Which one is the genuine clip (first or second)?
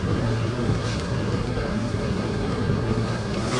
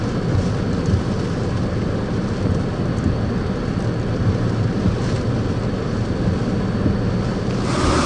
second